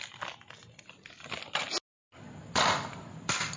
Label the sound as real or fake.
real